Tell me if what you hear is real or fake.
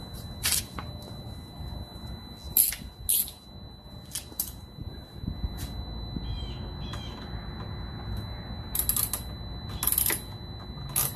real